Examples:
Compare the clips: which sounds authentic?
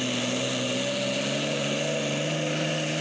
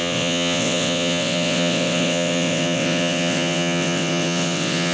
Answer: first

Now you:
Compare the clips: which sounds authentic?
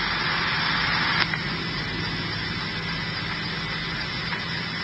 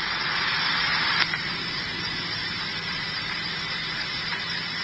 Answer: first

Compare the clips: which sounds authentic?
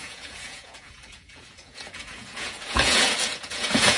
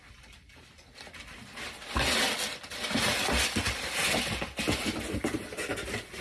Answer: second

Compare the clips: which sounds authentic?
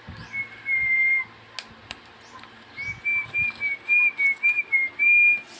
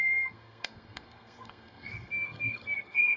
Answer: first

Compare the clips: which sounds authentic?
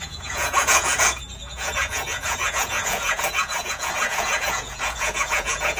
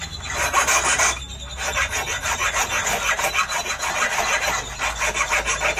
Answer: second